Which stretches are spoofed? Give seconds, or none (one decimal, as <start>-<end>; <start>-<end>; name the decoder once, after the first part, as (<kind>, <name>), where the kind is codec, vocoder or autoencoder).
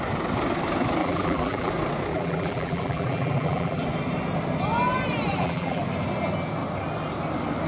1.0-1.7 (vocoder, BigVGAN v2); 2.1-3.9; 5.3-5.8